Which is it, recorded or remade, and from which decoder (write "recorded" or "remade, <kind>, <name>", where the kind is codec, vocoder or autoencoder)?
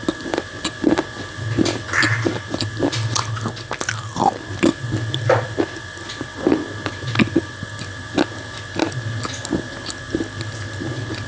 recorded